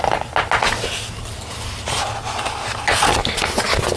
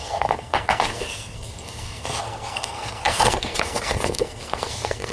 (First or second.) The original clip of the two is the first